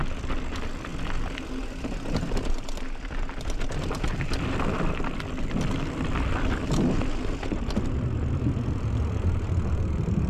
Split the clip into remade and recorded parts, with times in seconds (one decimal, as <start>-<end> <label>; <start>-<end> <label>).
0.0-10.3 recorded